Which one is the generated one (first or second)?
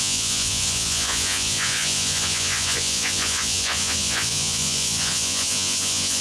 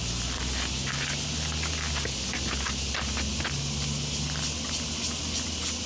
first